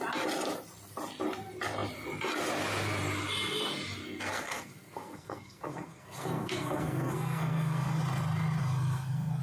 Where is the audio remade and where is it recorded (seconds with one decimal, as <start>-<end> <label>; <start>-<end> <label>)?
0.0-4.0 recorded; 4.0-8.0 remade; 8.0-8.6 recorded; 8.6-9.4 remade

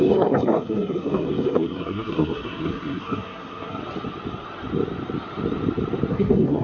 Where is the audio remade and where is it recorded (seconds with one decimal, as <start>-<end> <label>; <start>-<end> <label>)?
0.0-3.8 remade; 3.8-6.1 recorded; 6.1-6.6 remade